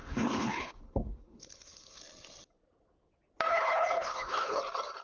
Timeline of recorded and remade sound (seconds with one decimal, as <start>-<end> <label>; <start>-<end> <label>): 0.0-2.0 remade; 2.0-3.5 recorded; 3.5-4.6 remade; 4.6-5.0 recorded